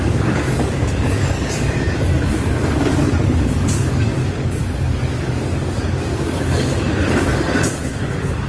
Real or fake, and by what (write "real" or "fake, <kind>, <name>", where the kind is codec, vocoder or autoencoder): fake, codec, DAC